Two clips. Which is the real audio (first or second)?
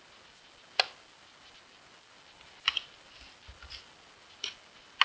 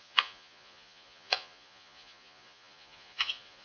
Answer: first